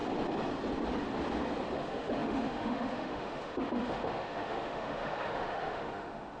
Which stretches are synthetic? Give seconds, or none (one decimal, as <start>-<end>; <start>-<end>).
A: 1.7-6.4